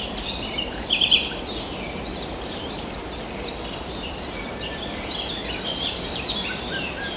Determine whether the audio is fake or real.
fake